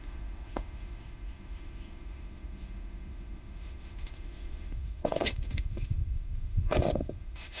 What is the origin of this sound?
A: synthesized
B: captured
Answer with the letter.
A